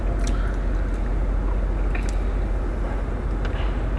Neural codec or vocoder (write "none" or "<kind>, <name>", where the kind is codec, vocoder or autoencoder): none